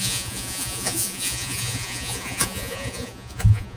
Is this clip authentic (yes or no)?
no